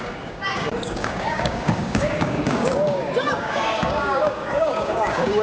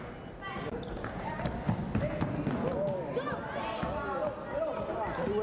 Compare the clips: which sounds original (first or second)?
second